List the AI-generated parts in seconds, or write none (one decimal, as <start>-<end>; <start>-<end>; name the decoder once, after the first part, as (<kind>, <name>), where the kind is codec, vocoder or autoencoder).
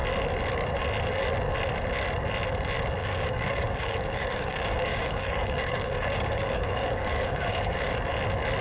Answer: 3.0-7.9 (codec, DAC)